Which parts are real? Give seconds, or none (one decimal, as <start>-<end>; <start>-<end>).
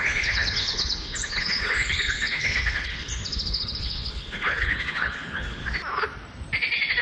5.6-7.0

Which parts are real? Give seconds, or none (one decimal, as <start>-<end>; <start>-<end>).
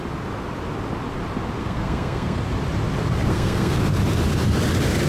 0.0-1.6; 2.4-3.3; 3.8-5.1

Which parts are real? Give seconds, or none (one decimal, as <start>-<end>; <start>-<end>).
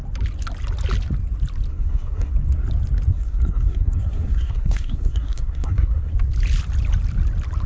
0.0-1.7; 2.3-3.1; 6.1-7.7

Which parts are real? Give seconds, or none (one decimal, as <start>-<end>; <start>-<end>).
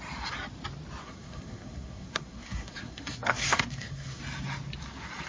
0.0-1.0; 4.2-5.3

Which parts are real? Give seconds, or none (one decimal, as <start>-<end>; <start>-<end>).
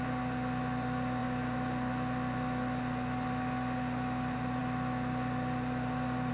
0.0-6.3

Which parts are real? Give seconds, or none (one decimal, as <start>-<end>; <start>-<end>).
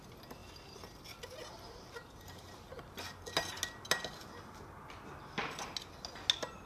0.0-6.7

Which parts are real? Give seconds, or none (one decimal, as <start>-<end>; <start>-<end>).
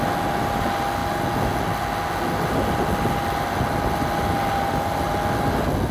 0.0-5.9